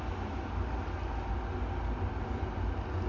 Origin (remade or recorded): recorded